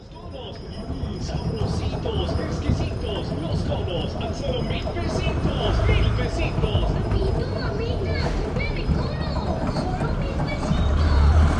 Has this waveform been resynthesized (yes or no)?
yes